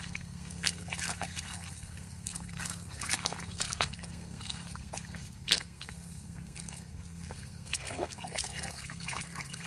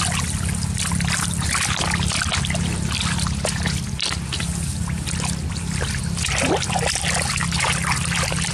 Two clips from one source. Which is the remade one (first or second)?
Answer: first